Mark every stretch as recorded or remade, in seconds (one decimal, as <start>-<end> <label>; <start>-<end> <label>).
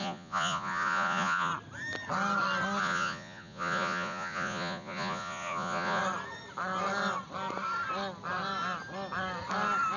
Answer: 0.0-1.5 remade; 1.5-2.8 recorded; 2.8-6.0 remade; 6.0-10.0 recorded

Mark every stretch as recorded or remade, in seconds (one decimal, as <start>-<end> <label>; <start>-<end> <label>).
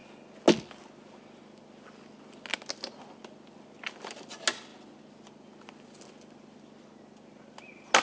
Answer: 0.0-8.0 recorded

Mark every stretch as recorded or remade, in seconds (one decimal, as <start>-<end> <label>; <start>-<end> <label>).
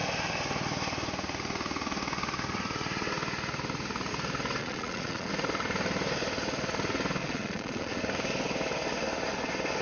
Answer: 0.0-4.6 recorded; 4.6-5.3 remade; 5.3-7.2 recorded; 7.2-8.0 remade; 8.0-9.8 recorded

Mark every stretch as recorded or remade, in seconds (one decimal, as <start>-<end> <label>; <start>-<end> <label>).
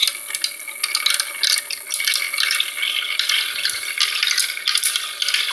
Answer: 0.0-5.5 recorded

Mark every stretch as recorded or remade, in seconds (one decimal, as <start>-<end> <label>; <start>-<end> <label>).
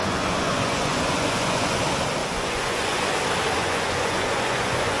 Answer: 0.0-1.8 remade; 1.8-2.2 recorded; 2.2-3.2 remade; 3.2-3.6 recorded; 3.6-5.0 remade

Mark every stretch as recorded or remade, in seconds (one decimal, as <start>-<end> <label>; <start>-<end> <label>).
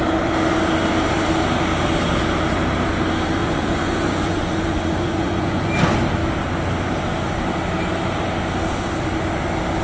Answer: 0.0-3.4 recorded; 3.4-5.7 remade; 5.7-9.8 recorded